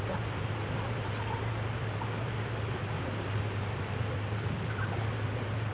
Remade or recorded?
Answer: recorded